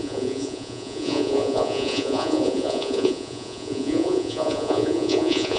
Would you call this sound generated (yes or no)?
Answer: yes